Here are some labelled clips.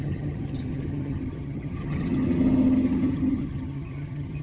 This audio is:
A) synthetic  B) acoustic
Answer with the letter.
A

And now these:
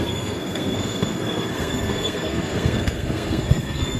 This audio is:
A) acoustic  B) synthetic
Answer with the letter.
B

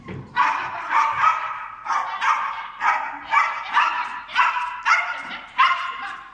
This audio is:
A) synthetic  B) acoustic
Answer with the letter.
B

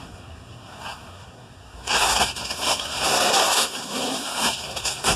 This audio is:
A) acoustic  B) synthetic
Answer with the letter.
B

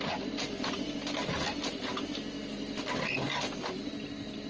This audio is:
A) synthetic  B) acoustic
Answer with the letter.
B